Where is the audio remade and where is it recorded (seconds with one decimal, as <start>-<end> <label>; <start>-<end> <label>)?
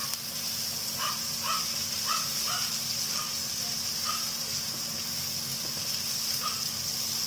0.0-7.3 recorded